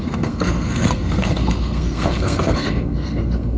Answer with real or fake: fake